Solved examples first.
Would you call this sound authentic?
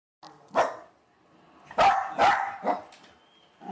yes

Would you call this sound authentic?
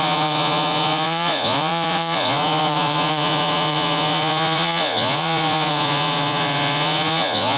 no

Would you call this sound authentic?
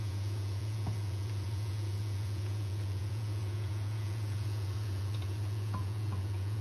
no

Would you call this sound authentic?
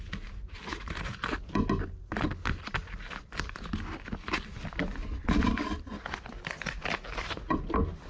yes